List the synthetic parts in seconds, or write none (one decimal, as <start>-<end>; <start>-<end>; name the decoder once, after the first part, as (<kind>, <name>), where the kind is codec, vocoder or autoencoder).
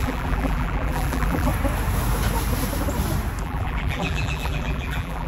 0.0-1.5 (vocoder, BigVGAN v2); 3.4-5.3